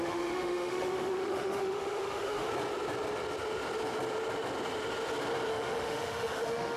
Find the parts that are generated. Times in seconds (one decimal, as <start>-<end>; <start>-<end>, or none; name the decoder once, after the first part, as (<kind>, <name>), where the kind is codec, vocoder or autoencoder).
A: 0.0-2.5 (autoencoder, DAC-VAE); 5.5-6.8